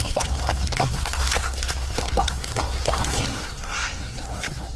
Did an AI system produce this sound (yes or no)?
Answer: yes